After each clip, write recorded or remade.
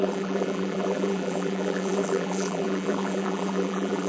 remade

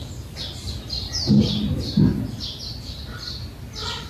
recorded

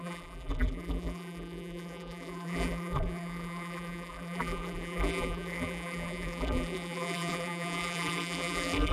remade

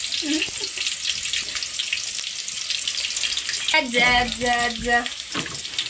recorded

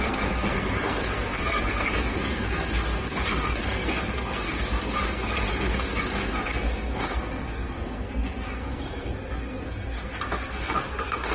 remade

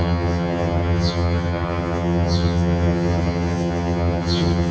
remade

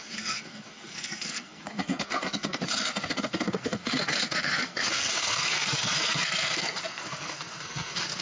remade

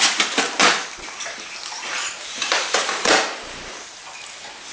recorded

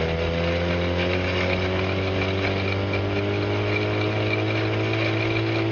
recorded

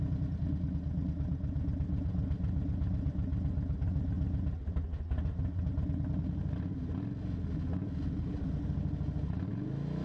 recorded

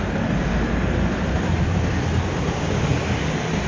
remade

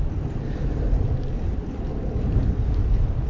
recorded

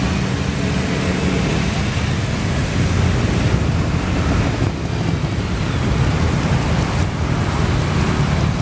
recorded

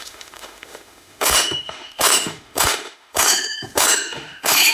remade